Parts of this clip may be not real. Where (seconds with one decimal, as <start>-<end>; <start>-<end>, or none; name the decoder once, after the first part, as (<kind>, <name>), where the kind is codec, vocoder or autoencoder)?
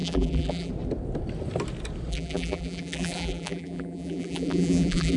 0.0-0.7 (vocoder, BigVGAN v2); 2.1-5.2